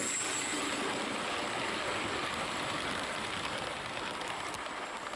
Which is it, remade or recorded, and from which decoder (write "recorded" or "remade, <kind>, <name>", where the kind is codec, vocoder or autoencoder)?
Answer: recorded